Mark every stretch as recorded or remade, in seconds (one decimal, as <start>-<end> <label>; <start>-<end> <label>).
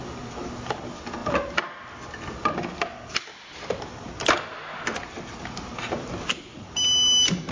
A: 0.0-7.5 recorded